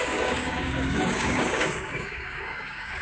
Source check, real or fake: fake